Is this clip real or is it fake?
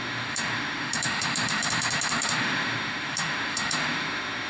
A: fake